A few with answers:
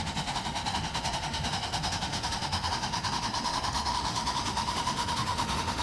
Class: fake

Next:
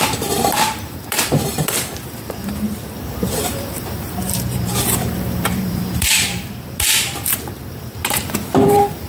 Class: fake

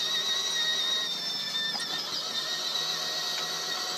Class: real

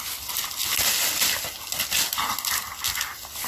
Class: real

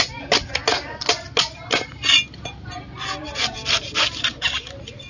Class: real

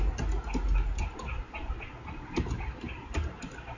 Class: real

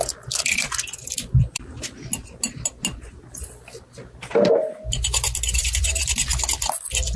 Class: real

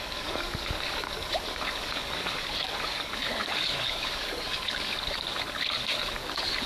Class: fake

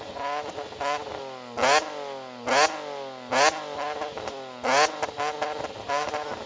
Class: real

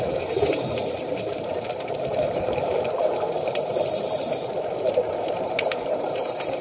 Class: fake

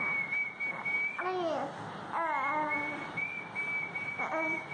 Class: real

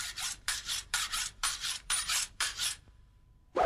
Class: fake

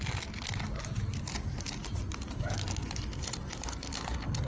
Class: real